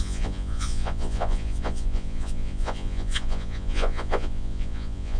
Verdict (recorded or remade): remade